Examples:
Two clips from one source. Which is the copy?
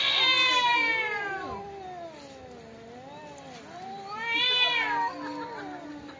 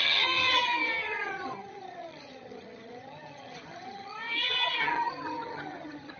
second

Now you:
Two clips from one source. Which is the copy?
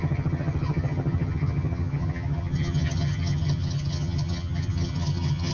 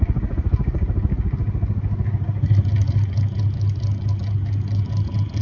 first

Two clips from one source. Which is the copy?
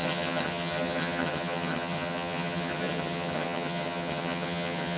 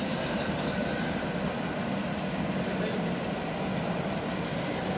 first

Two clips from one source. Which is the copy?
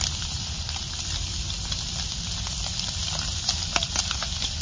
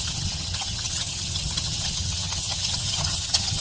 second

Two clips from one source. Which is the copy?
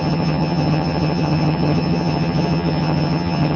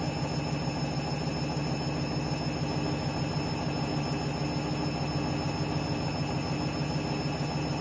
first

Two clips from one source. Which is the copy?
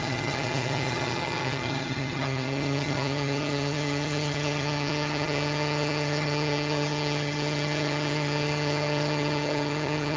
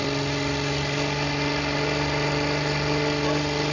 first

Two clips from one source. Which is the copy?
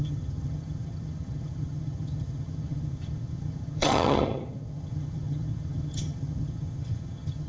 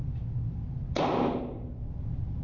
first